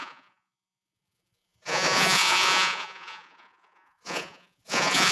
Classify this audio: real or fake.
fake